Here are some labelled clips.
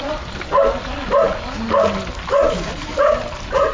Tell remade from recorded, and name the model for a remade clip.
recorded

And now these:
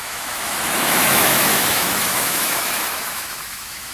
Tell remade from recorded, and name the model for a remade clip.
remade, autoencoder, DAC-VAE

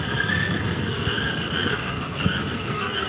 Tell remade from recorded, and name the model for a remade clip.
remade, codec, SNAC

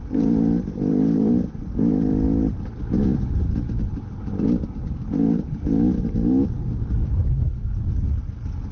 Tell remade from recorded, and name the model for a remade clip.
recorded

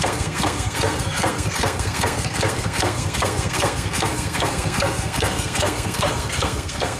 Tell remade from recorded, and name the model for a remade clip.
remade, codec, SNAC